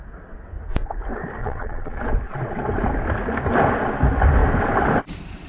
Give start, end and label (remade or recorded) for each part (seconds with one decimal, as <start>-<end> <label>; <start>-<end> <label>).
0.0-1.4 recorded; 1.4-2.0 remade; 2.0-5.5 recorded